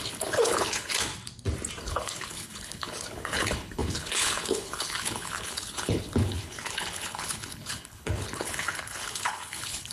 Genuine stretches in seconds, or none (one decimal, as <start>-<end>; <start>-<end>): 1.1-1.8